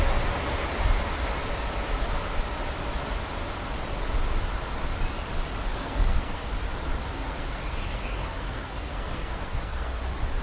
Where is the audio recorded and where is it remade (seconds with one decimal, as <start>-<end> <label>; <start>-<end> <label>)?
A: 0.0-5.7 recorded; 5.7-6.5 remade; 6.5-7.0 recorded; 7.0-10.0 remade; 10.0-10.4 recorded